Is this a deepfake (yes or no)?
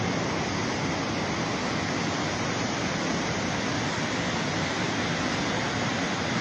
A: no